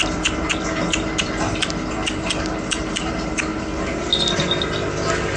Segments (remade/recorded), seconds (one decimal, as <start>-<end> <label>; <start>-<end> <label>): 0.0-3.5 remade; 3.5-5.4 recorded